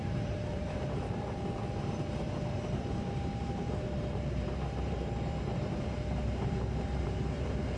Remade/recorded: remade